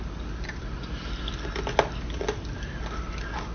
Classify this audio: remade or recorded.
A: recorded